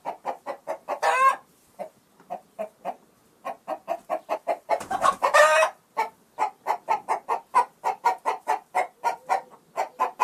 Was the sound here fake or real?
real